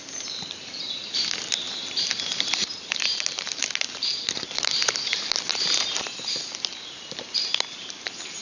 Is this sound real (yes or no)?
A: no